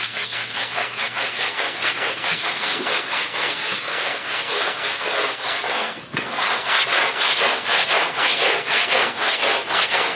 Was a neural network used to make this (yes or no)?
yes